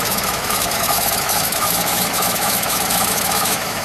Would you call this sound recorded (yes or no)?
no